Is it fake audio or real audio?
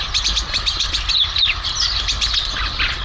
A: fake